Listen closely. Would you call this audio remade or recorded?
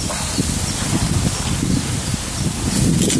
recorded